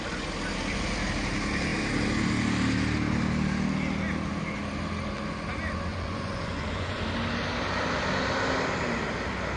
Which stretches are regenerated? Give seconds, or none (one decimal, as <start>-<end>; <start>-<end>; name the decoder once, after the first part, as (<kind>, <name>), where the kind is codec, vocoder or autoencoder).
5.9-7.0 (vocoder, Vocos)